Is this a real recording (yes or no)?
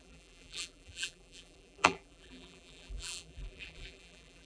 no